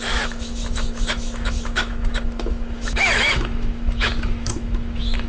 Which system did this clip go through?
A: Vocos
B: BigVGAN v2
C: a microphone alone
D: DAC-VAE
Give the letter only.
D